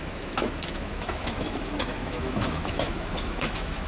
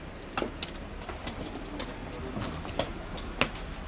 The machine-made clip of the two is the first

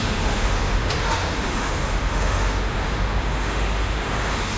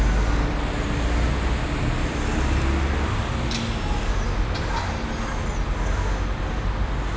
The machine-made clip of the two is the first